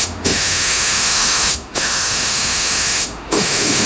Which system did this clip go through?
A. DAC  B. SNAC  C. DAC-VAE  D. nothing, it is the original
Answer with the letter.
C